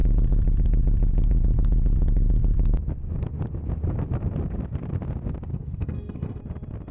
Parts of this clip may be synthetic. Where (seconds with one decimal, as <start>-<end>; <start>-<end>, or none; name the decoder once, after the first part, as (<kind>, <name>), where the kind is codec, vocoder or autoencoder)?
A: 5.5-6.4 (codec, SNAC)